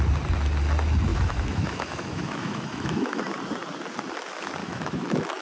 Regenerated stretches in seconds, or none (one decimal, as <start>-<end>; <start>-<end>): 1.1-3.2; 4.6-5.4